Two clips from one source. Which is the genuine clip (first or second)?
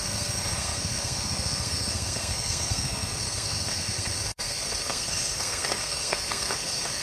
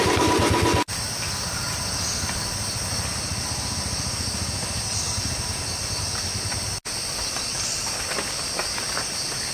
second